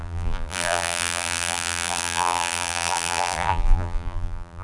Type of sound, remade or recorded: remade